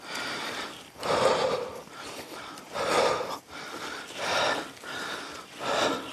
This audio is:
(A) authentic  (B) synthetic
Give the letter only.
A